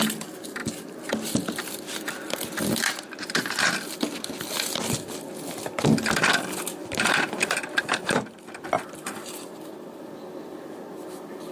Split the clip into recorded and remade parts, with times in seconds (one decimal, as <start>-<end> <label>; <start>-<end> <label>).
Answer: 0.0-0.6 recorded; 0.6-3.3 remade; 3.3-6.8 recorded; 6.8-8.2 remade; 8.2-11.5 recorded